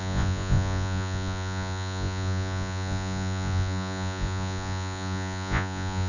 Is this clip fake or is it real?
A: fake